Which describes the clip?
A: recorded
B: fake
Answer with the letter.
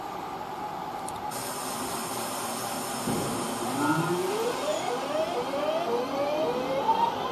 A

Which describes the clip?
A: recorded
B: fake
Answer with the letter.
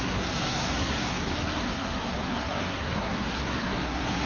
B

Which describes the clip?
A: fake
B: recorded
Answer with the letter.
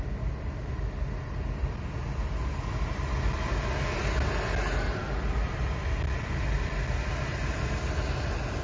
B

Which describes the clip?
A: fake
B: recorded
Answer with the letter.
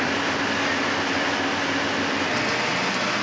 B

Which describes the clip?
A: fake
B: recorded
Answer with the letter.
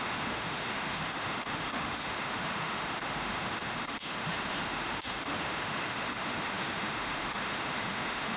A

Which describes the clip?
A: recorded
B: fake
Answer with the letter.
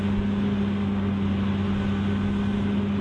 A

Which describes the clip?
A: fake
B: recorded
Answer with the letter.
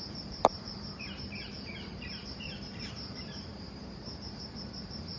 A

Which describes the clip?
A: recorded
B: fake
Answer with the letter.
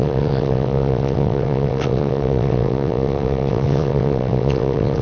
B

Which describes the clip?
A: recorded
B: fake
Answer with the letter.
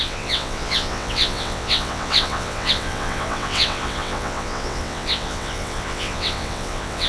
B